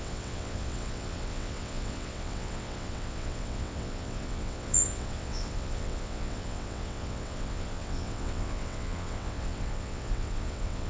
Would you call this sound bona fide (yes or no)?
no